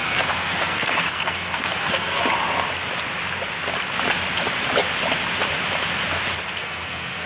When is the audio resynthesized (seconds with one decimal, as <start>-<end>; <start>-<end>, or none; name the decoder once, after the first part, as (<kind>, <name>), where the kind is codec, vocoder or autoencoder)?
0.0-2.2 (codec, SNAC); 6.6-7.3